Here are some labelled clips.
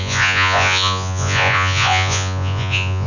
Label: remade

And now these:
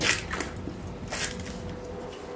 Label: recorded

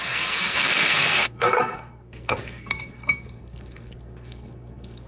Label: remade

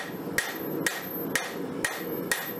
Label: recorded